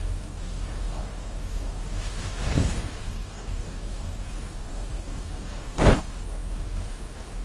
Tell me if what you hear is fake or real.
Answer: fake